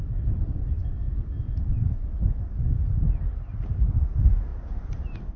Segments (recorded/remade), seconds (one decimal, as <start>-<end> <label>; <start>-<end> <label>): 0.0-5.4 recorded